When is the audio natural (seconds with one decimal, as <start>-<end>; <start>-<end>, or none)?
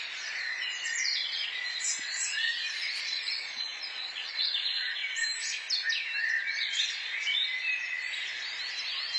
2.5-3.0; 5.0-6.2; 7.4-9.2